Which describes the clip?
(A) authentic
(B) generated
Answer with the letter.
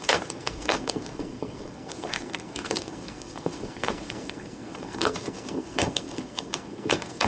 B